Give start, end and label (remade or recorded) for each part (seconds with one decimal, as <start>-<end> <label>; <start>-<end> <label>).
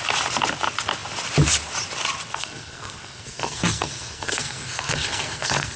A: 0.0-2.3 recorded; 2.3-5.8 remade